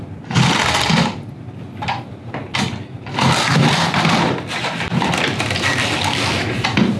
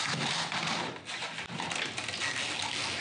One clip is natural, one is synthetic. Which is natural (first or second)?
second